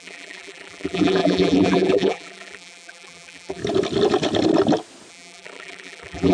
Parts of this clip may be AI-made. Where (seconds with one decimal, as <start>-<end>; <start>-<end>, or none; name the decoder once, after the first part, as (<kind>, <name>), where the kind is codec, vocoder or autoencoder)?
0.0-3.6 (vocoder, BigVGAN v2); 5.1-6.3